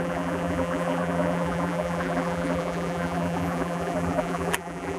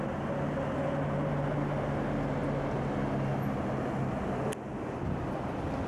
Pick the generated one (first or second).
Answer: first